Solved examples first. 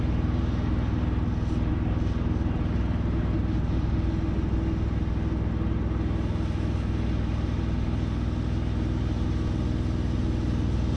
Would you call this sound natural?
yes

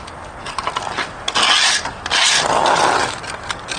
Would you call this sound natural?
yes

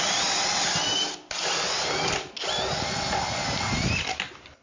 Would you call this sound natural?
yes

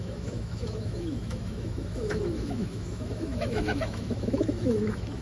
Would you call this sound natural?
no